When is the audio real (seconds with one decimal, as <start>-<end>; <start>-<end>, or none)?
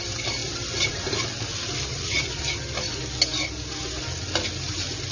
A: 0.0-1.9; 2.4-5.1